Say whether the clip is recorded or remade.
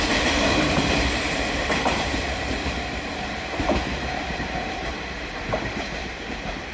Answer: remade